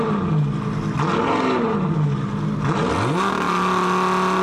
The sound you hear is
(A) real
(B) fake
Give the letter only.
A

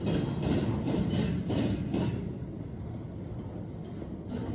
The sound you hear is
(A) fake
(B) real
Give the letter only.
B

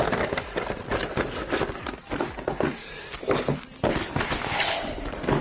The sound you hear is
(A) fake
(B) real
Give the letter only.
B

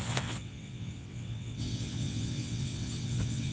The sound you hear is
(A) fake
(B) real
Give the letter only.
A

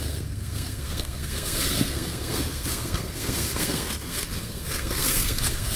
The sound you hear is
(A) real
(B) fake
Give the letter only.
B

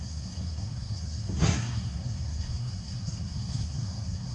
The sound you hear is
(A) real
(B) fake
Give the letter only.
B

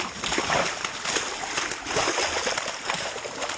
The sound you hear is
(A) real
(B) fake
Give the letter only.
A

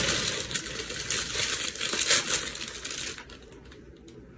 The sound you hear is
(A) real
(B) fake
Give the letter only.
A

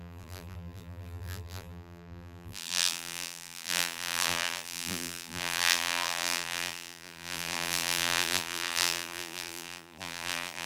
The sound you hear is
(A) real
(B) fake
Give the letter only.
B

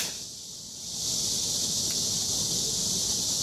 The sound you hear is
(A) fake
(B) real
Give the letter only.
B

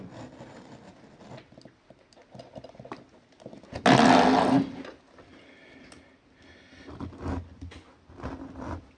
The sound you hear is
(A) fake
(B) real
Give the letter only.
B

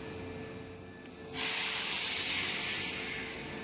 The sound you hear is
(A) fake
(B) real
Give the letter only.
B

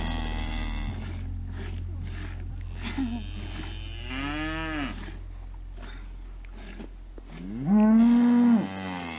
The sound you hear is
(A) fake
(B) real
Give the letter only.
B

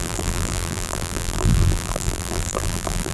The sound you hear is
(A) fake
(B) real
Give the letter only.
A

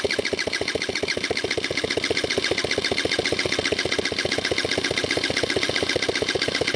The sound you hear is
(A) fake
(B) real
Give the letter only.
B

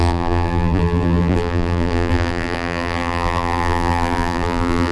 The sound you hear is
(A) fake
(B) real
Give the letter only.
A